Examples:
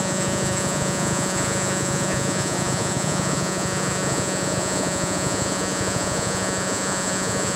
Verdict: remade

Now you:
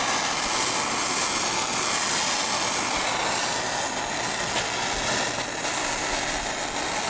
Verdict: recorded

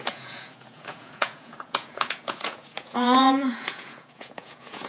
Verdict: remade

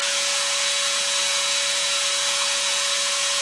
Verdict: remade